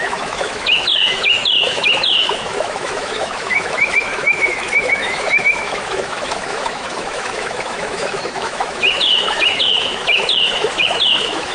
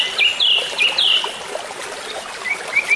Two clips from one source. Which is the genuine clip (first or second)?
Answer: second